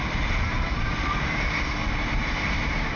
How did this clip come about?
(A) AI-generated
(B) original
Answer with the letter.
B